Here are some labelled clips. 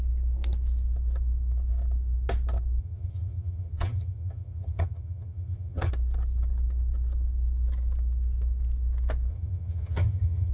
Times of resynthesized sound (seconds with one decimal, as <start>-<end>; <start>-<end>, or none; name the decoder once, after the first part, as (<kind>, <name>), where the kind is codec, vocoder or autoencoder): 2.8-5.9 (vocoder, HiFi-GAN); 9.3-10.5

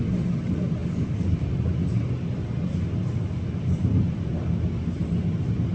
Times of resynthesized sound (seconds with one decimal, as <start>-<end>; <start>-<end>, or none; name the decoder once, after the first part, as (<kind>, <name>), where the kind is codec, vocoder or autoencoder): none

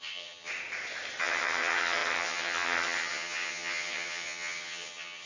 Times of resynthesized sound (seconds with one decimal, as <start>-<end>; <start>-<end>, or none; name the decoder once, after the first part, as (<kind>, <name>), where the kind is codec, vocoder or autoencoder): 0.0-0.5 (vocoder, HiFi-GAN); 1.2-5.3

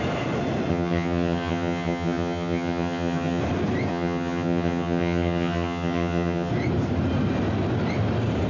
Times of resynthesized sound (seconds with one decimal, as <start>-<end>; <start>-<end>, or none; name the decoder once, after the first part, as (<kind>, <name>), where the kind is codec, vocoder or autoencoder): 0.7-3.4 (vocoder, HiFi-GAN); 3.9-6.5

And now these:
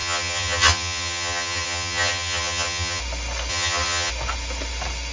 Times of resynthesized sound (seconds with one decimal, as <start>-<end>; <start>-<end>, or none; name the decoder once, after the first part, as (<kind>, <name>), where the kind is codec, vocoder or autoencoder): 0.0-3.0 (vocoder, HiFi-GAN); 3.5-4.1

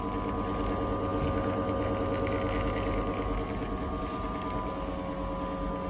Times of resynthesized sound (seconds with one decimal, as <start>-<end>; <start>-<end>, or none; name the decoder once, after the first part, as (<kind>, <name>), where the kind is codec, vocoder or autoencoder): none